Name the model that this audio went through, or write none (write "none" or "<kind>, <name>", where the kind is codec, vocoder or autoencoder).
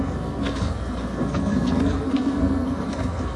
codec, SNAC